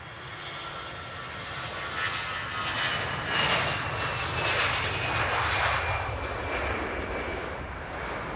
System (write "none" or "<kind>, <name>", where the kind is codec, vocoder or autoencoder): none